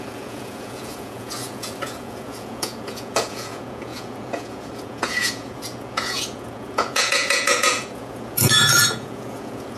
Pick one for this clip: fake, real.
fake